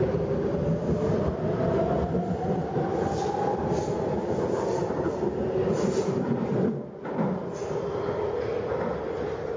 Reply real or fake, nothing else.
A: real